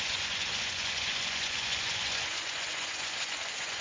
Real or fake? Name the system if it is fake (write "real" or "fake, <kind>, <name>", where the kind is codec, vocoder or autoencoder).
fake, vocoder, Vocos